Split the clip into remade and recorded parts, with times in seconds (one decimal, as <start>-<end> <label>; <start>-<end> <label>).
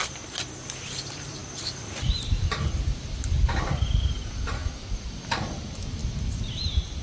0.0-0.9 recorded; 0.9-4.6 remade; 4.6-5.3 recorded; 5.3-7.0 remade